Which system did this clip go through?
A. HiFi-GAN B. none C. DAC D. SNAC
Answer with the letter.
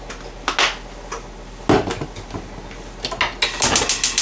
B